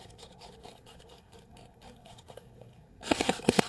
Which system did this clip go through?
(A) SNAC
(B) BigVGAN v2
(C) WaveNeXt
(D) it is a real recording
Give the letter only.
A